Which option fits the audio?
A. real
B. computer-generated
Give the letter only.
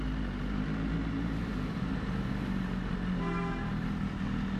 A